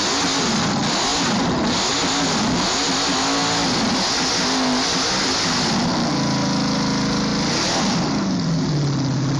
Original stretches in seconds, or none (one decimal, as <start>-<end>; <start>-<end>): 0.0-7.3; 8.7-9.4